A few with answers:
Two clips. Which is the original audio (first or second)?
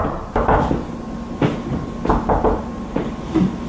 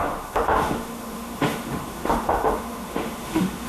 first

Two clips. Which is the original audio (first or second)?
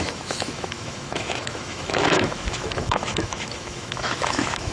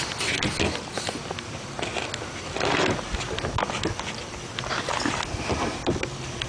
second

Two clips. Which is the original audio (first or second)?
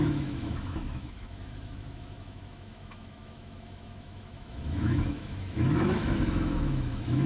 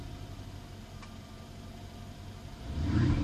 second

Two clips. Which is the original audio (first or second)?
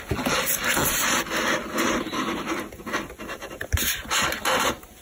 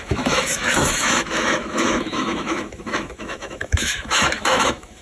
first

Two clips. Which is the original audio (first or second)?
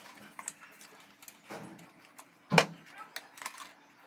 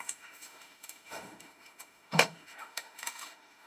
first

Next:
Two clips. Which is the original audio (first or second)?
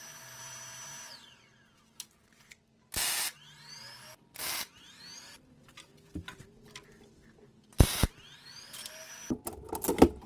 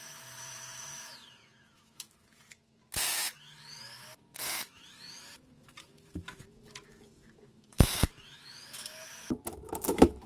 first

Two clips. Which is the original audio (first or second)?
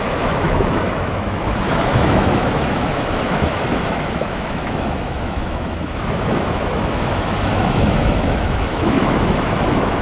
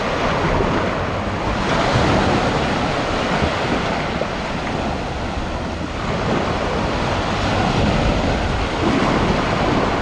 second